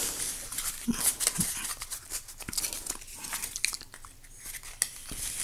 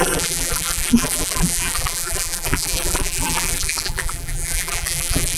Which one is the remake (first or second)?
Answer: second